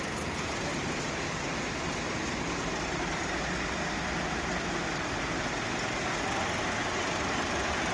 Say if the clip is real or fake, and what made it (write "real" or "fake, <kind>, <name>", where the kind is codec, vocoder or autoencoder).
real